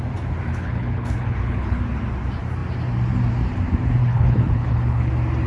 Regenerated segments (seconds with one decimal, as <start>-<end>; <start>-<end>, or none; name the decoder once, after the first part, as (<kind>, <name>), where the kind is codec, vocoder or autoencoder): 0.5-1.8 (codec, HILCodec); 4.0-5.1